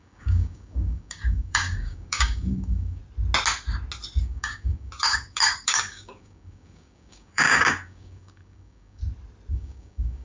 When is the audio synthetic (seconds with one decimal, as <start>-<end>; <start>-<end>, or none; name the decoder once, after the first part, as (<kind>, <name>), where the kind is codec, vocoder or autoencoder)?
0.0-3.0 (codec, DAC); 4.2-9.0; 9.5-10.2